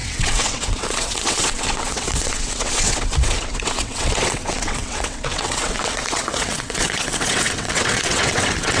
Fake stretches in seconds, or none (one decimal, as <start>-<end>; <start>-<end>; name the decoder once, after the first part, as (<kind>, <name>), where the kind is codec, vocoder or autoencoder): 0.0-8.8 (vocoder, WaveNeXt)